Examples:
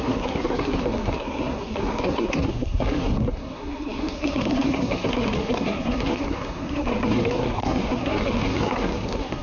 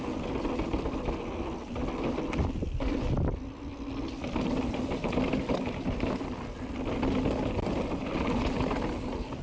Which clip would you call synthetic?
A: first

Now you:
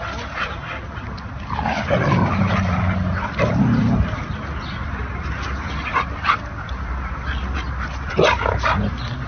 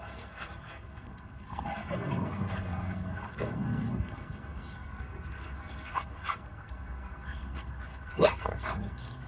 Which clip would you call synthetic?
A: second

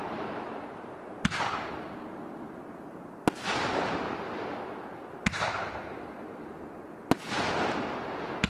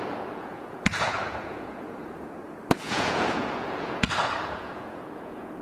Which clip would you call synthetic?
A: second